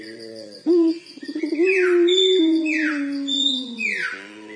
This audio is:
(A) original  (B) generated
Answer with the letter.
B